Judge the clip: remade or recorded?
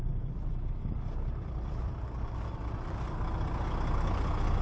recorded